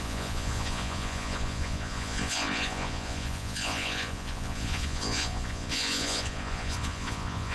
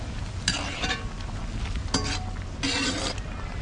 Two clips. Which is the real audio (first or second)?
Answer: second